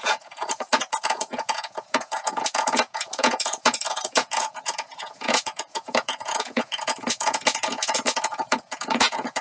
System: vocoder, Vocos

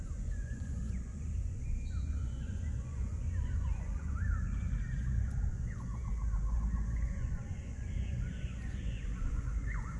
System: vocoder, Vocos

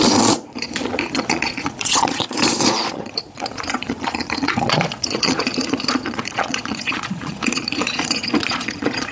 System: vocoder, Vocos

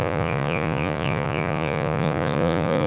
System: vocoder, Vocos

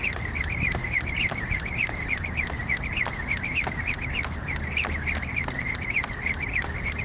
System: none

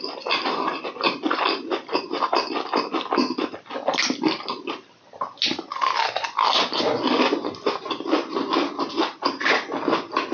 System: none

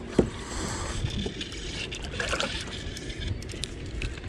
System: none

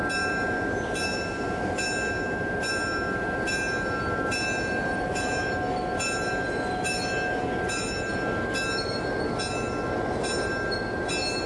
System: none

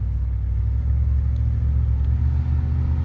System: none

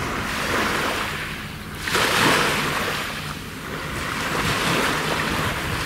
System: none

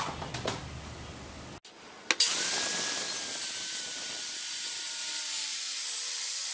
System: none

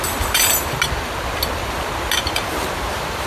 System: none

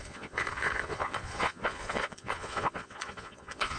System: vocoder, Vocos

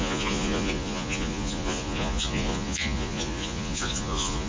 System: vocoder, Vocos